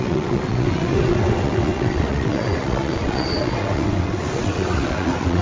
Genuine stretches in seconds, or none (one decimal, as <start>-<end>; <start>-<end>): none